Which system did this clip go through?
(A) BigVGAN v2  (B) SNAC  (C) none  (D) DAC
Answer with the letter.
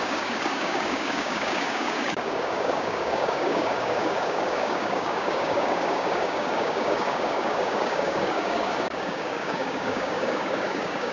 D